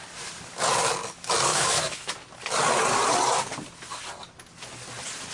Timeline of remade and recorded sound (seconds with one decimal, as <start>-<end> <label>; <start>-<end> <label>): 0.0-1.5 recorded; 1.5-2.1 remade; 2.1-5.3 recorded